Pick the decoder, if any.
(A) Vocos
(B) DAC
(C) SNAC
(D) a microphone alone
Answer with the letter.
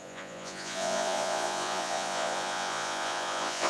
A